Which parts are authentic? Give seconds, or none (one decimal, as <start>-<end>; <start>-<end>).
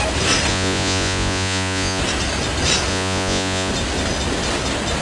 0.0-0.5; 2.0-2.9; 3.7-5.0